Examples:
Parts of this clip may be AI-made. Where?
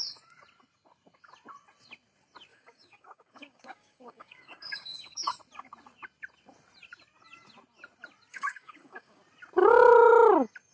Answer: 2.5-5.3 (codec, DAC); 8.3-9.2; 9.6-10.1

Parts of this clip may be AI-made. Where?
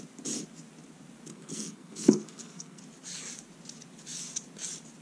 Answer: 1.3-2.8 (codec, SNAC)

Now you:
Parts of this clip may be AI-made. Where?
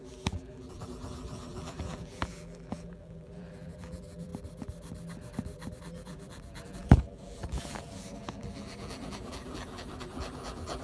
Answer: 0.0-4.3 (vocoder, BigVGAN v2); 5.8-10.8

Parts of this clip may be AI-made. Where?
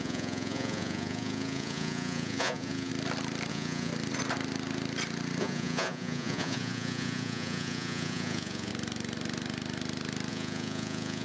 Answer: 0.0-2.9 (vocoder, Vocos); 3.5-3.9; 5.4-8.7; 10.3-11.2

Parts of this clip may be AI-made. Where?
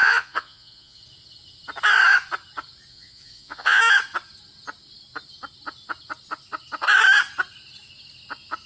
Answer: 0.0-1.0 (vocoder, Vocos); 2.9-3.8